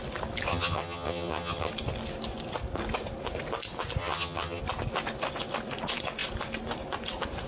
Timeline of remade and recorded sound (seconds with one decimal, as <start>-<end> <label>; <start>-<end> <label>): 0.0-0.5 recorded; 0.5-1.7 remade; 1.7-4.0 recorded; 4.0-4.6 remade; 4.6-7.5 recorded